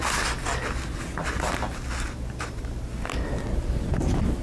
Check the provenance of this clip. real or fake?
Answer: real